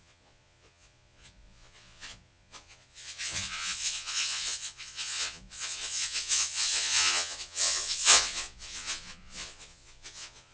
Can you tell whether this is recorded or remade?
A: remade